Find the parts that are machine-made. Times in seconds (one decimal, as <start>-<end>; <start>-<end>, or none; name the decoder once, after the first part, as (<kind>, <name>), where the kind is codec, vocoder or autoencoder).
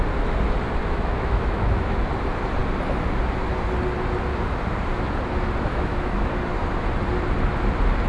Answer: 0.8-2.1 (autoencoder, DAC-VAE); 5.7-6.3